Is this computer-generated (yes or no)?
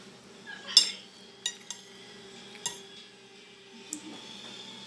no